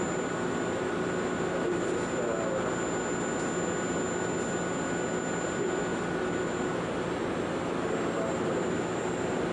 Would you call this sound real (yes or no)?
yes